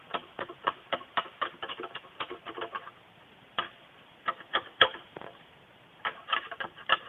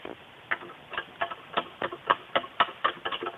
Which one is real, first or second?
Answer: second